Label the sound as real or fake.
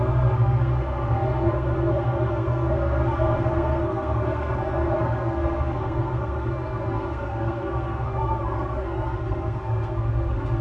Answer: fake